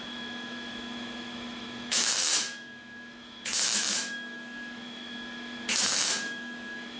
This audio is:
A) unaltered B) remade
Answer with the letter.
B